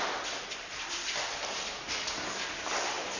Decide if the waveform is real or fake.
real